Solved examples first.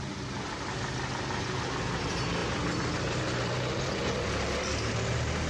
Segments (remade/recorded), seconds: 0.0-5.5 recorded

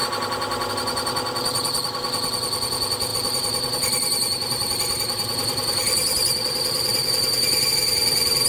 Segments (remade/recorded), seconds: 0.0-8.5 recorded

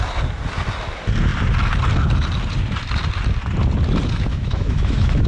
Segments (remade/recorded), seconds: 0.0-4.3 recorded; 4.3-5.3 remade